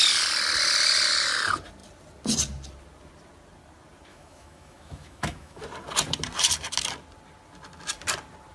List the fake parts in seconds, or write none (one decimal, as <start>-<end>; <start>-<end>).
4.1-5.6